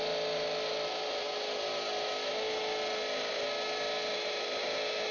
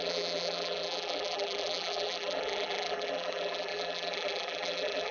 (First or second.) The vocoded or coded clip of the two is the second